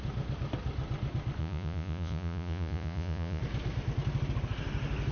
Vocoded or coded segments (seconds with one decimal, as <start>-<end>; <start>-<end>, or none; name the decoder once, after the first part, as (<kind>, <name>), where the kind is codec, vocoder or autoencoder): 1.4-3.4 (vocoder, Vocos)